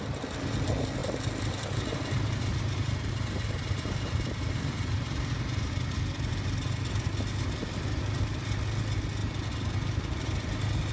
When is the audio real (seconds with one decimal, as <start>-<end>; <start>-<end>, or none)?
0.0-1.0; 5.7-10.9

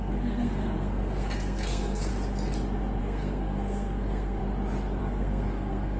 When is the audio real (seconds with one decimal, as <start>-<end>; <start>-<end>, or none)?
2.1-3.0; 4.4-5.0

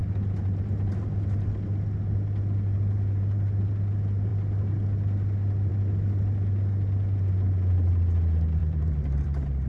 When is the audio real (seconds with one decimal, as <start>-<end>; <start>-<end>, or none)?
0.0-8.6

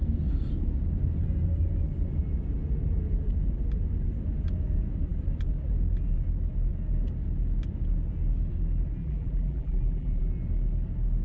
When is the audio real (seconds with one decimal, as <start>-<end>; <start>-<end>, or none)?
0.0-9.0; 10.3-11.2

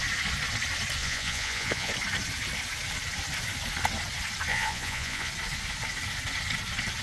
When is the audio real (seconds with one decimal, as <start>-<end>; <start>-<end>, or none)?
0.0-1.0; 1.9-4.5; 5.3-7.0

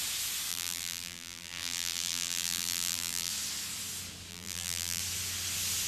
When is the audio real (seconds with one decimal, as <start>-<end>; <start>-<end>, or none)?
0.0-0.5; 3.3-4.3; 5.0-5.9

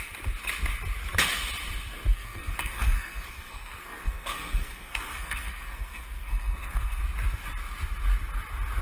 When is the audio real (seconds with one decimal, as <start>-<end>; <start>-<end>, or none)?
0.0-2.1; 7.0-8.8